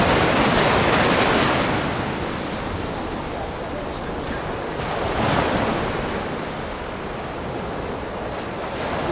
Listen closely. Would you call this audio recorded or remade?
recorded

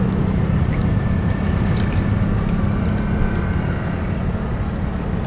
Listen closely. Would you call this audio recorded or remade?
recorded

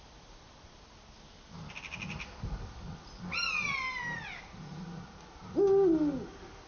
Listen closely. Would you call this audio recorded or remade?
recorded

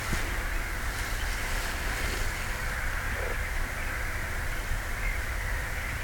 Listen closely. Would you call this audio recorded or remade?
recorded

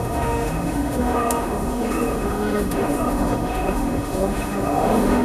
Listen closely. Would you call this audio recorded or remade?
remade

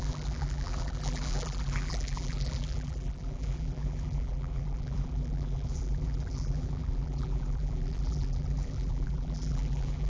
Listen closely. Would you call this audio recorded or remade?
remade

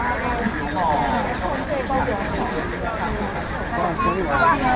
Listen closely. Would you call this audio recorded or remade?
recorded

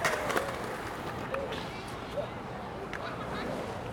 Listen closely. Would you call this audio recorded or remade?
recorded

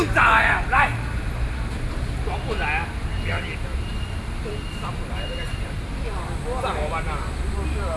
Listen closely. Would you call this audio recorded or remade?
recorded